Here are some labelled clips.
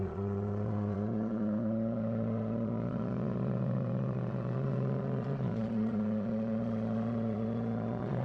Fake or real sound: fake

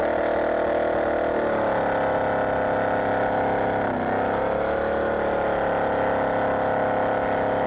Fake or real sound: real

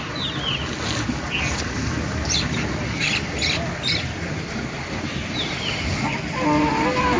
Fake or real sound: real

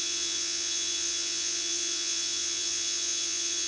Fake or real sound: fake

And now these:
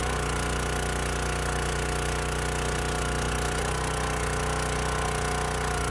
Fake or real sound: real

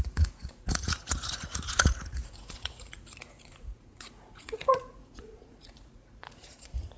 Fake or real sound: fake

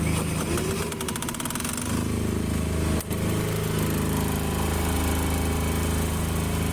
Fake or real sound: real